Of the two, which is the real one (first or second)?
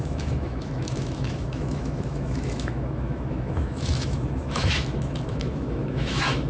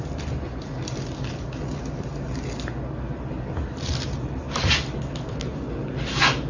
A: second